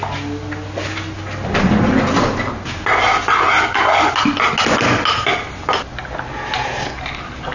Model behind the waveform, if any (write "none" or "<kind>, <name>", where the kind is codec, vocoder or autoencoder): none